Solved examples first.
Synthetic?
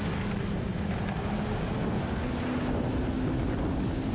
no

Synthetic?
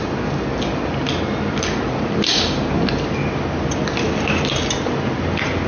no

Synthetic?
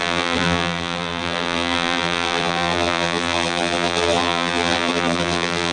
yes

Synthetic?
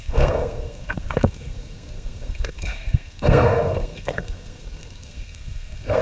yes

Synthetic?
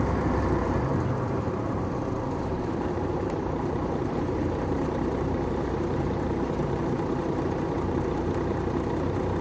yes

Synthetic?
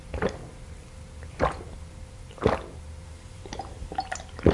no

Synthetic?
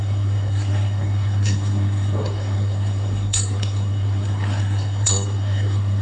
yes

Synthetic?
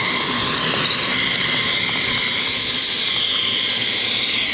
no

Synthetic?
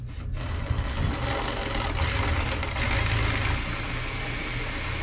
no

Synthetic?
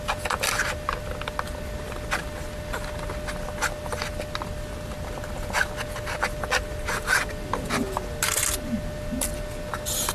no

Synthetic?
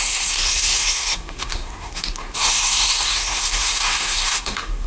yes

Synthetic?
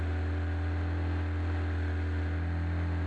no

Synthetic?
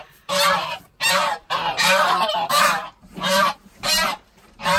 yes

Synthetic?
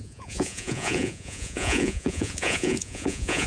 yes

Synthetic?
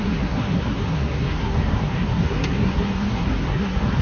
yes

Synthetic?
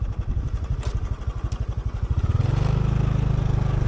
no